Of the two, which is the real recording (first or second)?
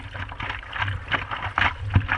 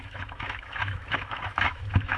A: first